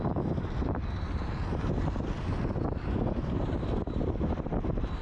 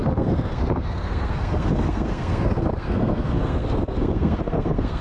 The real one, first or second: first